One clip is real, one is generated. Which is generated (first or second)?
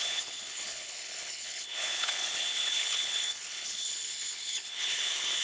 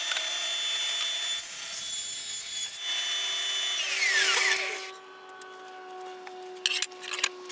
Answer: first